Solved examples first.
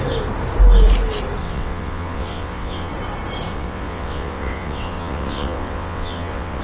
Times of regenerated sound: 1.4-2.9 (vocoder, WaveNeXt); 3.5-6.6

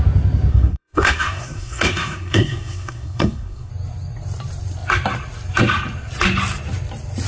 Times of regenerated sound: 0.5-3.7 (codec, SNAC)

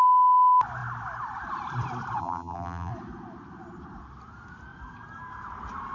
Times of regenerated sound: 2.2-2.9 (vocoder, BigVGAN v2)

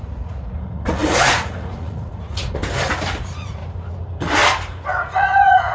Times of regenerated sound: 0.0-2.6 (vocoder, Vocos); 3.2-3.6; 5.0-5.7

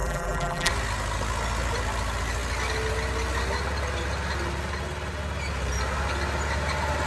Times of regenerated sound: 0.0-0.7 (vocoder, BigVGAN v2)

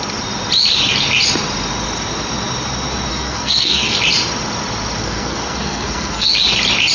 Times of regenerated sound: 3.1-4.0 (codec, SNAC); 5.0-6.3

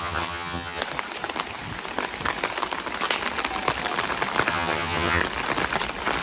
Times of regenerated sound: 0.0-0.8 (vocoder, HiFi-GAN); 4.5-5.2